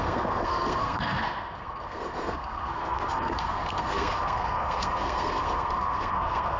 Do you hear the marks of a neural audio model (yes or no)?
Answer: yes